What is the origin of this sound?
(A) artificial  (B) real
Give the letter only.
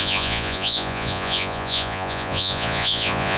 A